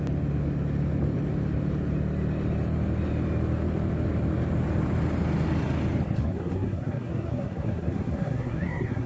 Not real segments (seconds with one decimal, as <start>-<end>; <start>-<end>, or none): 6.2-9.1